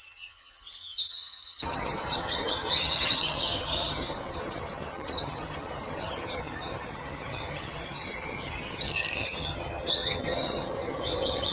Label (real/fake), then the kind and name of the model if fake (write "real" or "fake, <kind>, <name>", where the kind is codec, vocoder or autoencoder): fake, vocoder, HiFi-GAN